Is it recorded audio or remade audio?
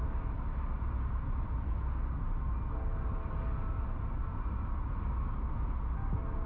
recorded